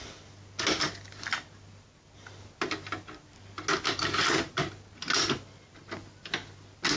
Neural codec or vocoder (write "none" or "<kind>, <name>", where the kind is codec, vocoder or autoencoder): none